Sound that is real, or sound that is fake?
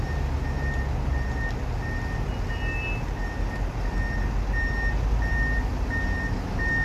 real